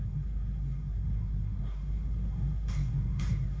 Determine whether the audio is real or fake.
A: fake